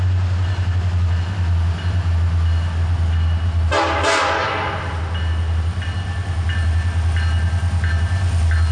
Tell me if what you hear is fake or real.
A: real